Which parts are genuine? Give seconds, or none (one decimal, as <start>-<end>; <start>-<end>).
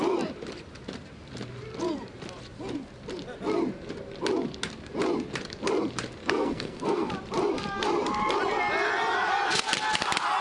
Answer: 0.0-6.2; 7.1-10.4